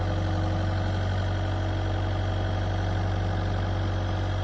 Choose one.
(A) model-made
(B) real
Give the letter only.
B